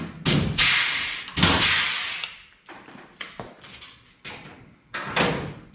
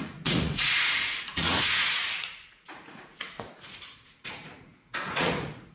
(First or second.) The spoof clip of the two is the second